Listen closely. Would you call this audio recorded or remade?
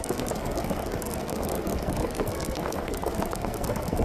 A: remade